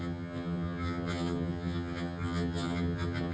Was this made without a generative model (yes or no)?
no